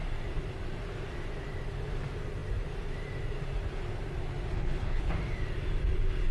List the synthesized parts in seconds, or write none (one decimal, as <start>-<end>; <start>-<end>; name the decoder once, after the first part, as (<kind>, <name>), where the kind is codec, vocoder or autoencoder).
4.5-5.1 (codec, HILCodec)